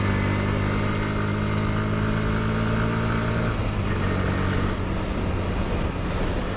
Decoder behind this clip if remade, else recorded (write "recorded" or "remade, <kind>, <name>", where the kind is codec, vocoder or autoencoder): recorded